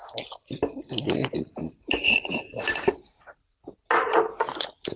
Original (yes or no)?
yes